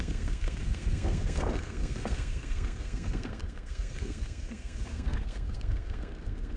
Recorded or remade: remade